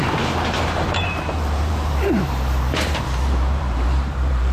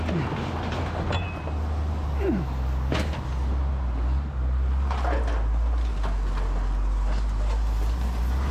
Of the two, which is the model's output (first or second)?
first